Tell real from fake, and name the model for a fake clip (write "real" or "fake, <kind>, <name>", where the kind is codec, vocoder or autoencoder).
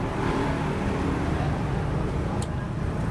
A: fake, vocoder, BigVGAN v2